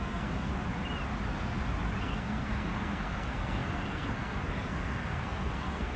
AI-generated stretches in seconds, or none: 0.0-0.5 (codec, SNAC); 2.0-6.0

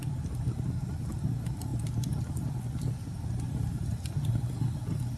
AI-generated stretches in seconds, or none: none

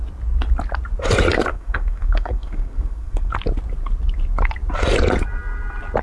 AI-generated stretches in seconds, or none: 1.5-3.3 (codec, SNAC)

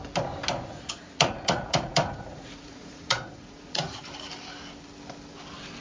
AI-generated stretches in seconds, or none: 0.7-4.0 (vocoder, Vocos)

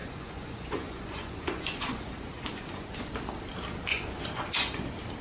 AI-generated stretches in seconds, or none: 0.0-3.1 (vocoder, Vocos); 3.9-4.8

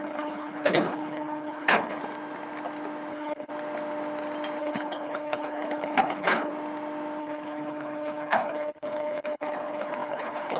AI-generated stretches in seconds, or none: 0.0-2.0 (codec, HILCodec); 3.1-3.5; 4.6-6.5; 7.2-10.6